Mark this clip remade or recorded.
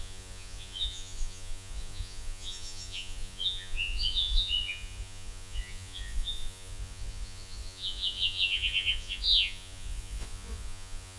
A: remade